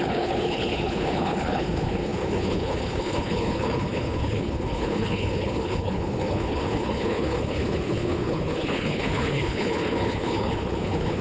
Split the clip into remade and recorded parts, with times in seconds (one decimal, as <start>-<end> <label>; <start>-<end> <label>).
0.0-11.2 remade